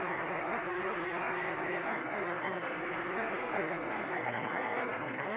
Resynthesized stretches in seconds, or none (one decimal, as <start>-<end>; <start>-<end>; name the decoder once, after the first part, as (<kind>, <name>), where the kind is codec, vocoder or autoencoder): 0.0-5.4 (codec, SNAC)